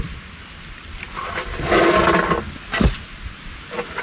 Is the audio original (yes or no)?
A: yes